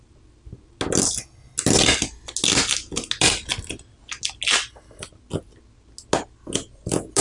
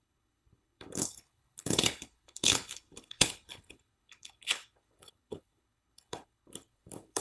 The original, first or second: first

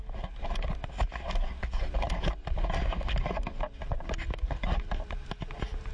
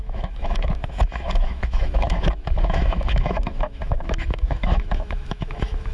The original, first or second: first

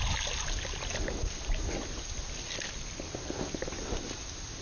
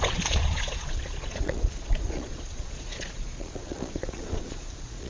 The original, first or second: first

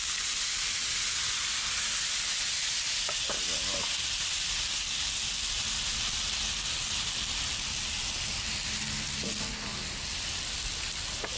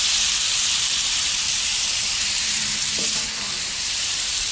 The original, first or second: first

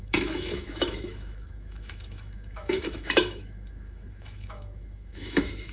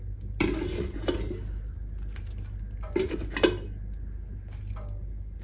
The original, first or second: second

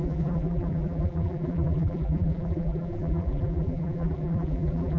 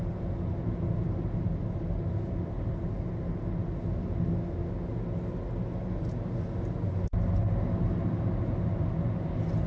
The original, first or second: second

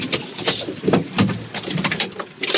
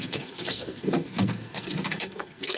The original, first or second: first